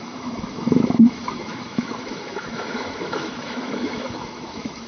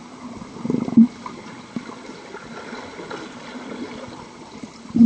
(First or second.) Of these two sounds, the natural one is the second